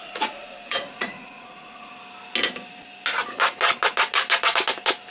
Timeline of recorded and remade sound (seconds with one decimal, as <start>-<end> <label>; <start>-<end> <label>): 0.0-1.9 remade; 1.9-5.1 recorded